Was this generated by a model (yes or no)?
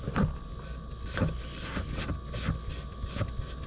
no